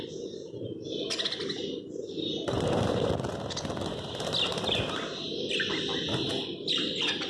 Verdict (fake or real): real